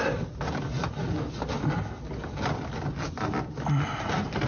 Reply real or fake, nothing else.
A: real